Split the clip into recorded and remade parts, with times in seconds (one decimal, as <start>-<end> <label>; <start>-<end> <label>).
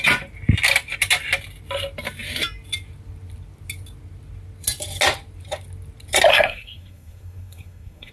0.0-6.3 recorded; 6.3-8.1 remade